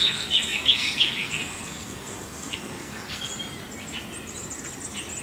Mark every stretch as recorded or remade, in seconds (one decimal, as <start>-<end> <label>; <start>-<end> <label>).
0.0-3.3 remade; 3.3-5.2 recorded